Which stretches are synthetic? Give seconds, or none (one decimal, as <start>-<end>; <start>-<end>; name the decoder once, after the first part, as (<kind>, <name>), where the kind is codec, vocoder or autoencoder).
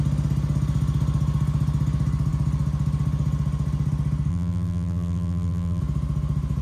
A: 4.3-5.8 (vocoder, BigVGAN v2)